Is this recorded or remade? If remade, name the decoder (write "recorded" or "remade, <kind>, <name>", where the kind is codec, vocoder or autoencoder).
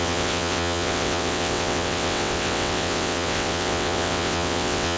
remade, vocoder, WaveNeXt